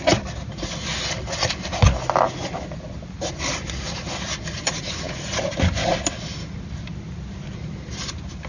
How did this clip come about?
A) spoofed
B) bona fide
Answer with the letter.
B